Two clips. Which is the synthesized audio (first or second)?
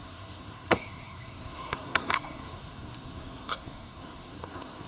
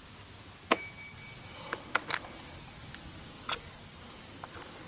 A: first